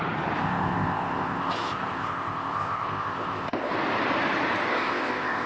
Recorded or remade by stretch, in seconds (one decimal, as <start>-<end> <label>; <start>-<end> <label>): 0.0-0.4 recorded; 0.4-3.7 remade; 3.7-4.7 recorded; 4.7-5.5 remade